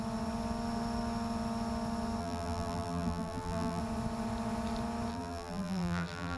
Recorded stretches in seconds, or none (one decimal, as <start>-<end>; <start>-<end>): 0.0-2.2; 3.8-5.1